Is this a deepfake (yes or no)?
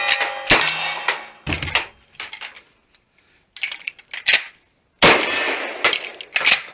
no